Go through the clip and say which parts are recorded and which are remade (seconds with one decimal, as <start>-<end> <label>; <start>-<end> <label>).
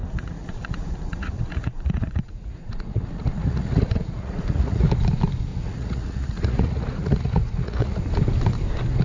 0.0-4.9 remade; 4.9-5.5 recorded; 5.5-8.0 remade; 8.0-9.0 recorded